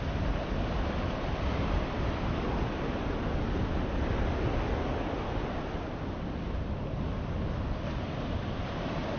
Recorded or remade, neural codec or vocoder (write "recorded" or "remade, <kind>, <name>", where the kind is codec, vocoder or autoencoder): recorded